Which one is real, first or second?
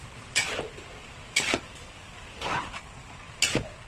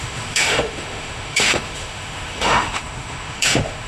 first